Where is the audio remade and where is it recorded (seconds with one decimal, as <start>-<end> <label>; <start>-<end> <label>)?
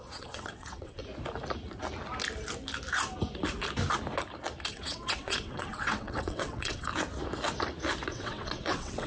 0.0-1.0 remade; 1.0-4.7 recorded; 4.7-6.9 remade; 6.9-8.1 recorded; 8.1-9.1 remade